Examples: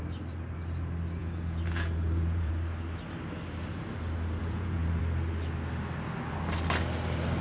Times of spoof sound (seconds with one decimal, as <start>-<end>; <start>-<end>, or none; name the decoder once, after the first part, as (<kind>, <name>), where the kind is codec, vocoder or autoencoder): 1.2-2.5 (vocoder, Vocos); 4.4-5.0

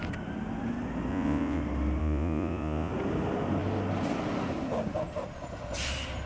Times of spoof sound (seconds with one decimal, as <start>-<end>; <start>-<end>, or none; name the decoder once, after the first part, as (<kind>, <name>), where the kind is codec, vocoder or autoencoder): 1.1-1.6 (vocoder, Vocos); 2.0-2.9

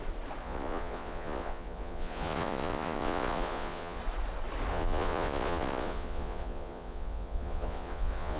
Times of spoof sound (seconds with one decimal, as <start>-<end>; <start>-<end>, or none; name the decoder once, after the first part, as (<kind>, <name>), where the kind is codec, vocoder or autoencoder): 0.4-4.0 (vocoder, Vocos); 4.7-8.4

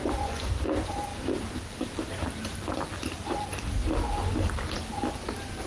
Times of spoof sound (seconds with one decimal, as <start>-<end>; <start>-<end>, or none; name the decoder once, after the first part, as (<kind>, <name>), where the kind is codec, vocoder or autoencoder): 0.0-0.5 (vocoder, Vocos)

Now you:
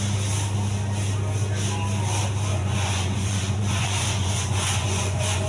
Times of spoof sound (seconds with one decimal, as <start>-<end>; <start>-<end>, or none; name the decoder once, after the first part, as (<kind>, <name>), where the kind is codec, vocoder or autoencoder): 2.5-5.5 (vocoder, Vocos)

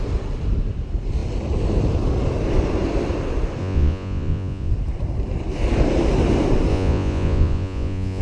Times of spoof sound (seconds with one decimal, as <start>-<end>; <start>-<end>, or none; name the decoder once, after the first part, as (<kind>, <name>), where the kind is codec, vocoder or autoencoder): 3.6-4.7 (vocoder, Vocos); 6.7-8.2

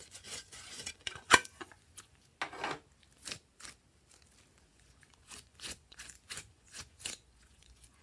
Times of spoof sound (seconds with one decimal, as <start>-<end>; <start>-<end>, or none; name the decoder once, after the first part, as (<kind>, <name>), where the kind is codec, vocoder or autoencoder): 0.0-2.3 (vocoder, Vocos); 4.6-8.0